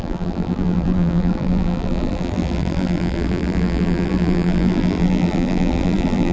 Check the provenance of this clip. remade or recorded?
remade